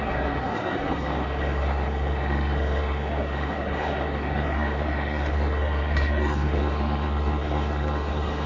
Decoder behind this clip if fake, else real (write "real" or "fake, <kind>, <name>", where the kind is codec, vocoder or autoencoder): fake, codec, SNAC